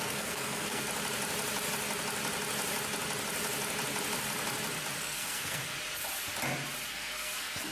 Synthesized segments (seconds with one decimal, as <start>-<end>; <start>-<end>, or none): 0.0-0.9; 5.0-5.7; 6.9-7.7